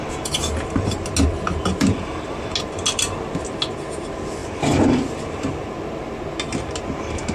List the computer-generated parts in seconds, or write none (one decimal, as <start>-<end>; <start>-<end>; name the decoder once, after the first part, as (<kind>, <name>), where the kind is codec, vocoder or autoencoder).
none